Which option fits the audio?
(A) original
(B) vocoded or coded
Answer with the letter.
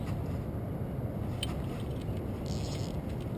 A